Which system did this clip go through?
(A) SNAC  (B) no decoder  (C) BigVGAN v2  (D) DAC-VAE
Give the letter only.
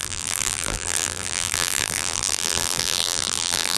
C